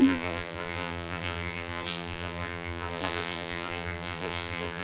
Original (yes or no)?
no